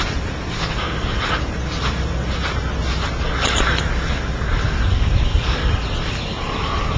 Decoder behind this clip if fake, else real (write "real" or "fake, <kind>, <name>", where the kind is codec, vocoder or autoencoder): real